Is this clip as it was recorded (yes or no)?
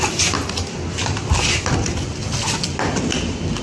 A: yes